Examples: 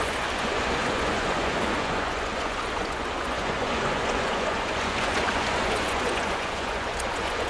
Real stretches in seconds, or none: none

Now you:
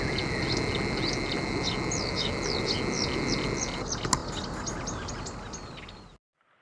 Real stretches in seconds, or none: 0.0-6.6